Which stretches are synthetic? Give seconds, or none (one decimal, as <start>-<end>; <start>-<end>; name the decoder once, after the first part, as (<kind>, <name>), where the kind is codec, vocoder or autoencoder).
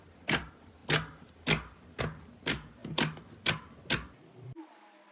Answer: 0.0-0.8 (vocoder, BigVGAN v2); 2.0-2.8; 3.9-5.1